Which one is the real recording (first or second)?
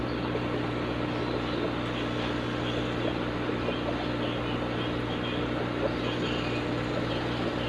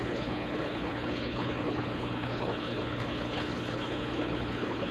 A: first